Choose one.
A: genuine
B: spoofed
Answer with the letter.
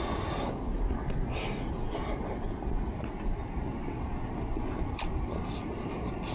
A